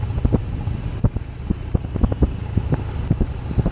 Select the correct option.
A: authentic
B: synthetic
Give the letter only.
A